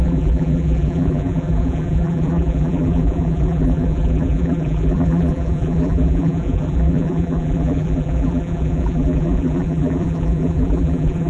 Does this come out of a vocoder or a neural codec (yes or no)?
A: yes